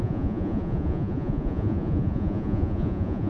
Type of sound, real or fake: fake